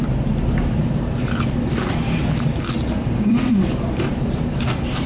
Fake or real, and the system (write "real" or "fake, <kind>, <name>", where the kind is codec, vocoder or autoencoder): fake, vocoder, BigVGAN v2